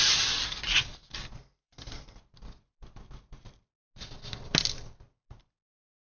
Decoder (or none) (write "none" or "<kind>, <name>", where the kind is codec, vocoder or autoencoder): none